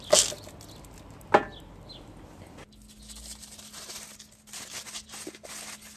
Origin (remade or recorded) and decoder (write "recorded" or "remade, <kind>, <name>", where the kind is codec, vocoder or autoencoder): recorded